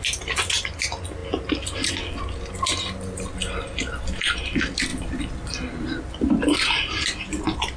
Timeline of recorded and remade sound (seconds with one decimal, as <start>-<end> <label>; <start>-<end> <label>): 0.0-4.9 recorded; 4.9-6.3 remade; 6.3-7.8 recorded